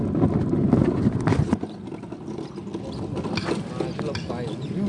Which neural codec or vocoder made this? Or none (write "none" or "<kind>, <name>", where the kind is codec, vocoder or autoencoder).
none